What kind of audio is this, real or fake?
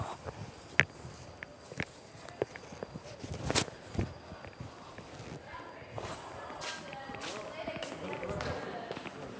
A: real